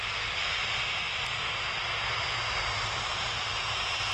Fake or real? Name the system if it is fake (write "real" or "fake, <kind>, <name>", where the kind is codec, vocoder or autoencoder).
real